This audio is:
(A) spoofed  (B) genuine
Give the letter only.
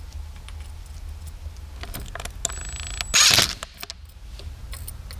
B